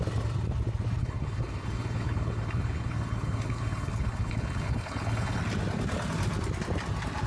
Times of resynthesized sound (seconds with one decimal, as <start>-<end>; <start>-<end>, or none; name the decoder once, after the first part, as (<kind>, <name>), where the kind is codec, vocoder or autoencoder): 1.0-5.4 (codec, HILCodec)

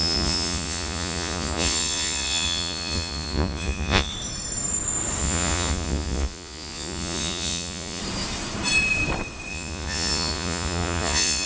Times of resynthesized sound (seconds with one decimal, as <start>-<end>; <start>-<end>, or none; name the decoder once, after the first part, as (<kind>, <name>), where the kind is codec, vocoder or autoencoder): 0.0-4.1 (vocoder, Vocos); 5.2-8.0; 9.5-11.5

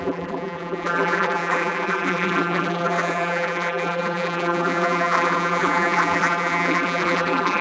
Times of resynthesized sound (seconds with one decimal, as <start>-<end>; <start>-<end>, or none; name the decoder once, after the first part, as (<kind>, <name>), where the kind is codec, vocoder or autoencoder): 0.0-7.6 (vocoder, BigVGAN v2)

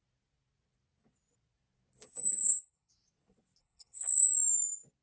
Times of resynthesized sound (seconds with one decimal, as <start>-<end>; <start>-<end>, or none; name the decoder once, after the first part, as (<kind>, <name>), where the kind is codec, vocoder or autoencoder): 2.4-2.9 (codec, HILCodec); 3.6-4.2